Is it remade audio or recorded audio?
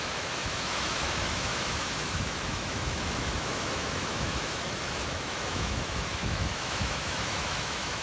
remade